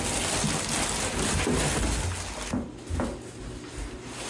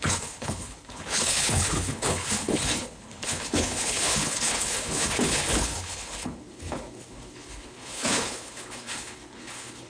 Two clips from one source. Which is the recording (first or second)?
first